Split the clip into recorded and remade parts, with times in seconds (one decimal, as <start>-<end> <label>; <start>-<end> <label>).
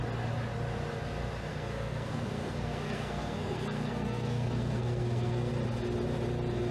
0.0-1.5 recorded; 1.5-5.5 remade; 5.5-6.7 recorded